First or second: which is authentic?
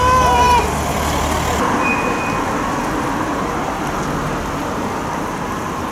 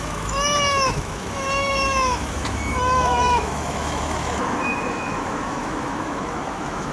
first